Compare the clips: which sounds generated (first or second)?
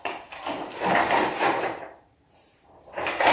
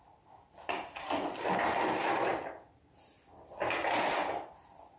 first